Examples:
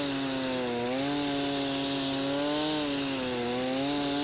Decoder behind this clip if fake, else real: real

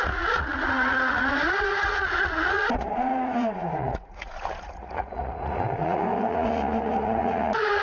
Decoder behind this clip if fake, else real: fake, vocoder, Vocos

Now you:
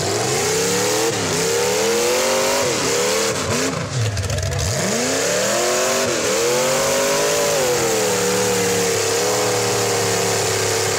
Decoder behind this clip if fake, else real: real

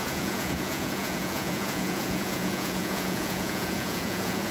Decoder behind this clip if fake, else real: fake, vocoder, Vocos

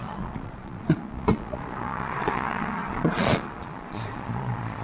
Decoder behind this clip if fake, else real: fake, vocoder, Vocos